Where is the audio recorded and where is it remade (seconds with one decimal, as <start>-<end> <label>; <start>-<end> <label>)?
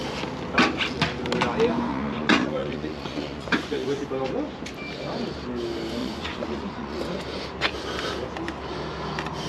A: 0.0-1.9 recorded; 1.9-4.1 remade; 4.1-6.0 recorded; 6.0-7.0 remade; 7.0-9.5 recorded